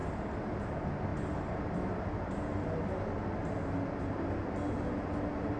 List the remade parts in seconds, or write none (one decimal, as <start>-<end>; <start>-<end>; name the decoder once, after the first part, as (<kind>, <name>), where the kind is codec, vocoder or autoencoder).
none